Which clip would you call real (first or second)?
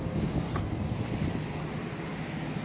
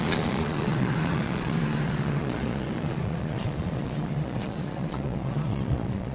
first